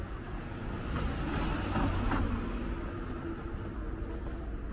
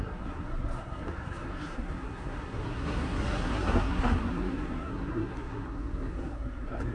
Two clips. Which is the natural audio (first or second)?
first